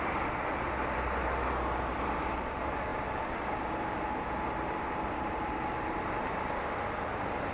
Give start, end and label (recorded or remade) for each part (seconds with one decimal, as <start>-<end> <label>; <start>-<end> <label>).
0.0-7.5 recorded